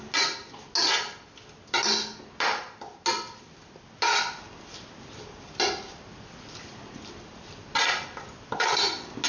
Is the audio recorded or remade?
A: recorded